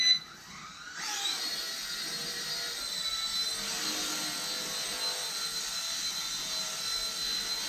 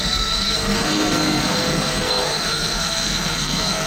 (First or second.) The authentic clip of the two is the first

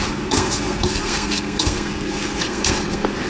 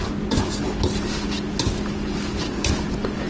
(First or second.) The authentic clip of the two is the second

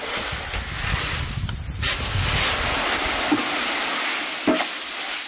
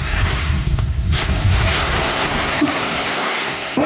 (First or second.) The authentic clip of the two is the first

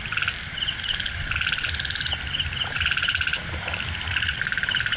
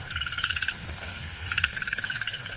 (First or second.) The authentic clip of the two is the first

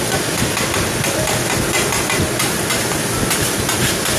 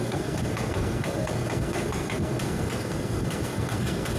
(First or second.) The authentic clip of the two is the first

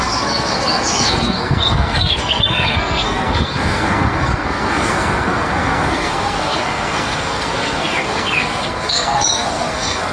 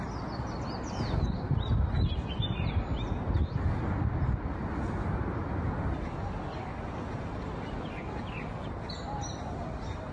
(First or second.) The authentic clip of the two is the second